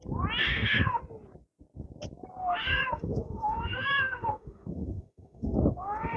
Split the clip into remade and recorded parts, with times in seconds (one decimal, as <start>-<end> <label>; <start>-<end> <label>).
0.0-0.4 recorded; 0.4-1.0 remade; 1.0-2.4 recorded; 2.4-6.2 remade